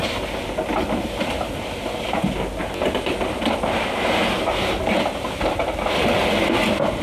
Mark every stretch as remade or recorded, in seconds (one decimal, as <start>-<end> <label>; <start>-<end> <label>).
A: 0.0-7.0 recorded